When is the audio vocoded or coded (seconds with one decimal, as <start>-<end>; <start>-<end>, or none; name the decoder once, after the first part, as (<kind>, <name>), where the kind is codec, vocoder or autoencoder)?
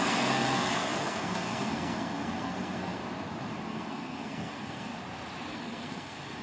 0.0-3.0 (codec, SNAC); 3.7-4.9; 5.5-6.4